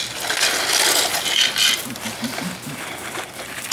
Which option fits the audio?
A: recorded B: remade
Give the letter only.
A